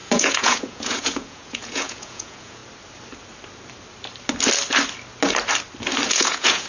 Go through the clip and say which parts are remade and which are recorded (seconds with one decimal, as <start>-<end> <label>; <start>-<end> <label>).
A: 0.0-2.6 remade; 2.6-6.1 recorded; 6.1-6.7 remade